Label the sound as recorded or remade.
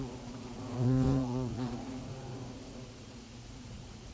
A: remade